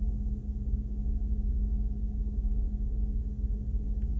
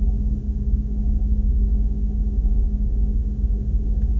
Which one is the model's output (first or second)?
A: second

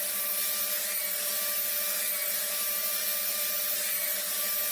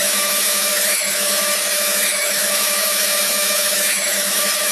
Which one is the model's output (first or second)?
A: second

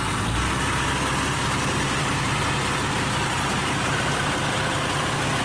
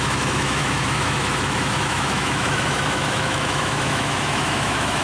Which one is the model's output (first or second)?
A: second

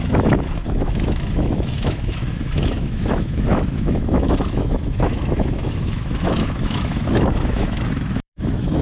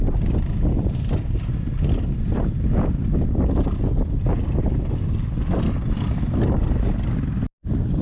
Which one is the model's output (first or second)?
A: first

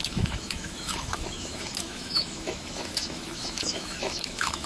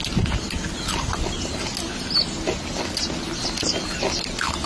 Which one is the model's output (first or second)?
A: first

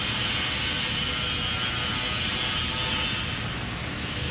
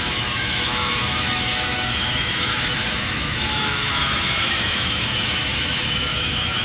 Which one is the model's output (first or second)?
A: second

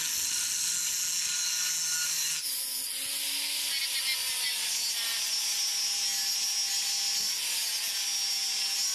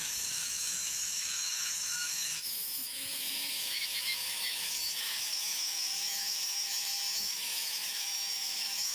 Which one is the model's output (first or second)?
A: second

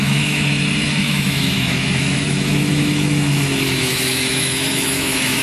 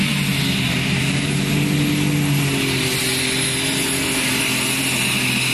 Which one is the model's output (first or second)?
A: first